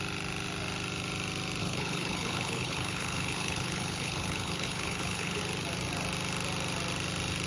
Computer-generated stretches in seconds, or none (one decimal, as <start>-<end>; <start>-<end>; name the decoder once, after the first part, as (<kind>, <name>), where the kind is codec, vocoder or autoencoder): 1.6-5.4 (codec, HILCodec)